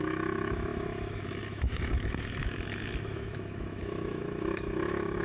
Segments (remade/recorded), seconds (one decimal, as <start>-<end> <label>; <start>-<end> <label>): 0.0-5.2 remade